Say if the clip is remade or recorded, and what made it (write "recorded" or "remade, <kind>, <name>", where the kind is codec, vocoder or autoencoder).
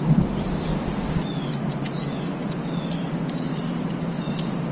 recorded